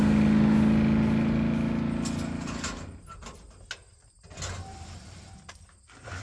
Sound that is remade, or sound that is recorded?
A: recorded